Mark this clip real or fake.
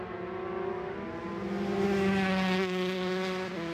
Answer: real